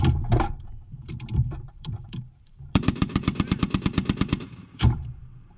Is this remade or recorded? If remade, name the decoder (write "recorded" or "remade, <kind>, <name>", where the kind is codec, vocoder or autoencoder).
remade, vocoder, BigVGAN v2